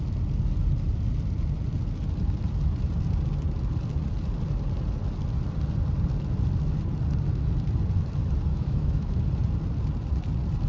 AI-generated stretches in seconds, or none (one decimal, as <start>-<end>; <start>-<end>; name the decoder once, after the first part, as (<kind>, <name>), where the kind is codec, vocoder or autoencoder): 8.5-9.2 (autoencoder, DAC-VAE)